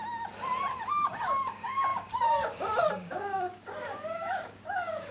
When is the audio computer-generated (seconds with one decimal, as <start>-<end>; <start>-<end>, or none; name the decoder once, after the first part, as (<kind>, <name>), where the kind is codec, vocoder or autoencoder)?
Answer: 0.9-5.1 (codec, DAC)